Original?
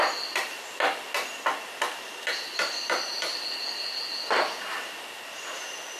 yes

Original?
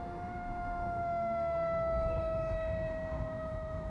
no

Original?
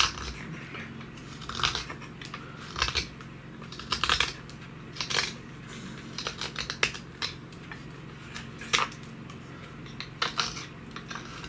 yes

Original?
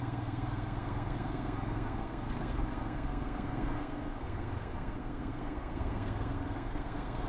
no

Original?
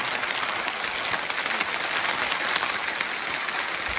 yes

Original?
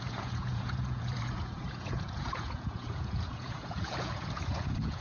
no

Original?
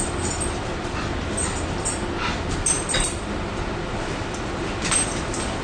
yes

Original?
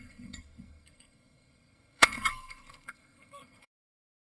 no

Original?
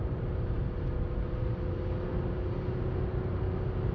yes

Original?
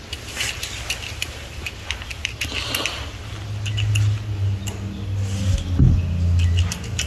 yes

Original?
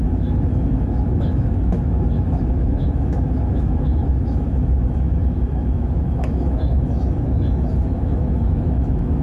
no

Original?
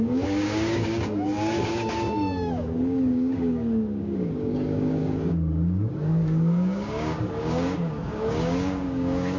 no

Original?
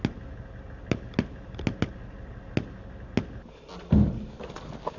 yes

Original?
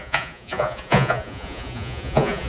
no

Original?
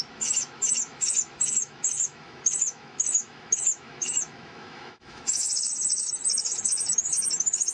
no